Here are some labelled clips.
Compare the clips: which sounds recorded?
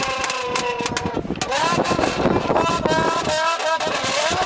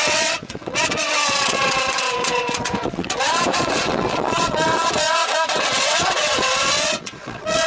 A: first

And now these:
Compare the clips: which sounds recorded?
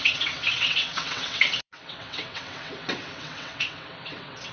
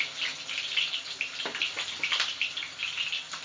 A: second